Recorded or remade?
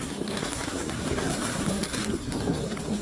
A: remade